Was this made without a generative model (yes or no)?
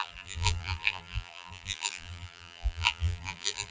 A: no